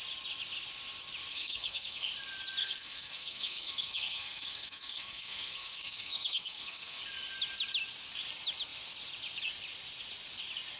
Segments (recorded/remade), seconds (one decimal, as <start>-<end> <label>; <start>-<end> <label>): 0.0-1.3 recorded; 1.3-2.1 remade; 2.1-2.6 recorded; 2.6-7.0 remade; 7.0-10.8 recorded